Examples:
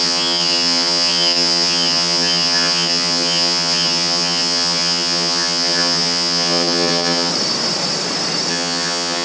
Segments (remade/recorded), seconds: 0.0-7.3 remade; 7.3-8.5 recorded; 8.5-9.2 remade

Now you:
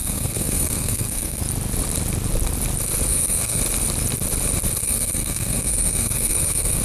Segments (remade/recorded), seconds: 0.0-1.4 remade; 1.4-3.1 recorded; 3.1-3.6 remade; 3.6-4.8 recorded; 4.8-6.8 remade

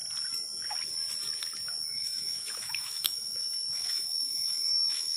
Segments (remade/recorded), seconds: 0.0-1.9 recorded; 1.9-5.2 remade

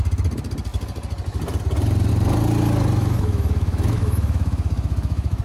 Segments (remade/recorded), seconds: 0.0-3.0 recorded; 3.0-5.4 remade